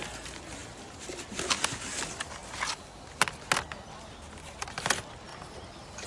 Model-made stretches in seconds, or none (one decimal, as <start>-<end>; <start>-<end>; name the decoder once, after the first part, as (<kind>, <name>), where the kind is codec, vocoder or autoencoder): 0.6-1.2 (vocoder, BigVGAN v2); 5.3-6.1